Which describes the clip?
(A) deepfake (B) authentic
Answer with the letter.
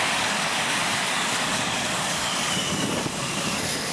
A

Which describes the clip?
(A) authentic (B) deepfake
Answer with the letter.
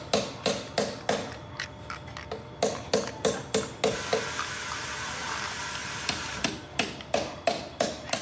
A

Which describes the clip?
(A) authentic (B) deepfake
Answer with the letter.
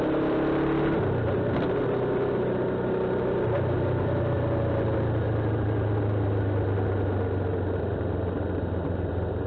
A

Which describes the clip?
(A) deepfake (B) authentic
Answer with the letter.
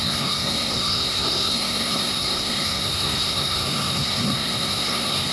A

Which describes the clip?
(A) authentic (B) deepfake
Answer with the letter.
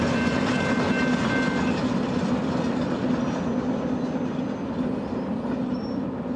A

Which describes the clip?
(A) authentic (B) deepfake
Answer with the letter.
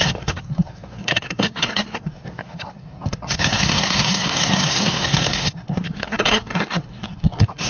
B